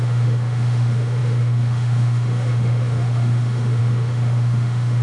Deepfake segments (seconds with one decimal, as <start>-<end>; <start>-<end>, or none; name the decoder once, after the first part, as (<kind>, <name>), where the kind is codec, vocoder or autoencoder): 0.0-5.0 (autoencoder, DAC-VAE)